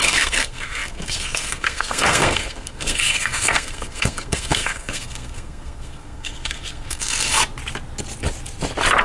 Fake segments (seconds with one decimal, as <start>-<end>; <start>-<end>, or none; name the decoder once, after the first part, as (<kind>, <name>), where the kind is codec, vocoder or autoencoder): 0.0-7.4 (codec, SNAC)